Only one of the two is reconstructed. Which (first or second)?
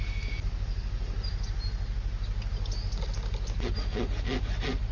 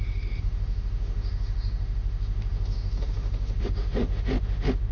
second